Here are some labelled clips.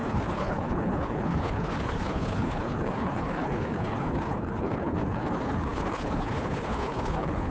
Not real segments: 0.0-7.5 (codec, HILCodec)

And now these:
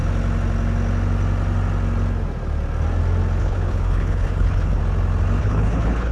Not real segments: 3.4-4.8 (codec, HILCodec); 5.4-6.1

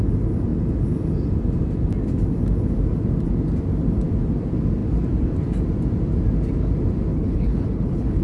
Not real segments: 7.1-8.2 (codec, HILCodec)

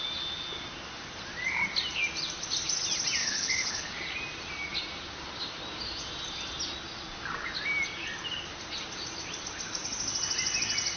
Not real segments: 3.2-3.9 (codec, HILCodec)